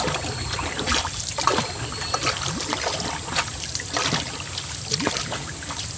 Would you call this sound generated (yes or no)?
no